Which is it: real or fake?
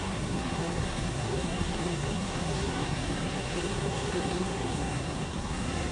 fake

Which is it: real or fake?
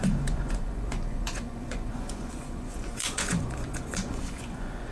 fake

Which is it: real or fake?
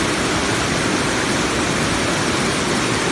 real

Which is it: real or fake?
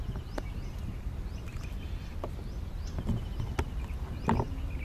real